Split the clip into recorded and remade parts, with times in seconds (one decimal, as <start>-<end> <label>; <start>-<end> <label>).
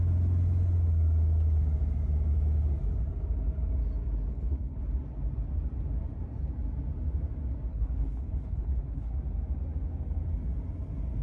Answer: 0.0-4.3 recorded; 4.3-4.8 remade; 4.8-7.7 recorded; 7.7-9.1 remade; 9.1-11.2 recorded